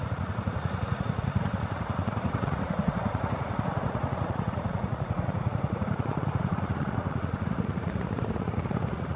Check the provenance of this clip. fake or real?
fake